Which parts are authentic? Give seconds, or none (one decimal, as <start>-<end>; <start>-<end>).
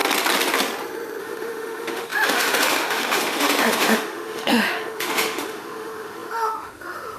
0.0-1.2